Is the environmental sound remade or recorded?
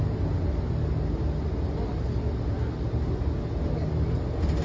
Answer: recorded